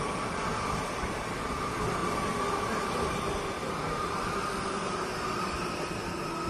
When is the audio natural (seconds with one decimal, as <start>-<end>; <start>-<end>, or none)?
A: 0.0-6.5